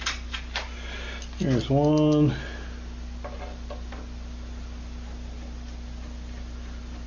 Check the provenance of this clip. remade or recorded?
recorded